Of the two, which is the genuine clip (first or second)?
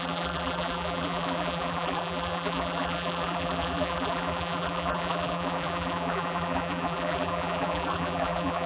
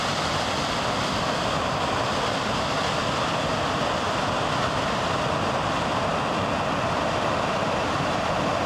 second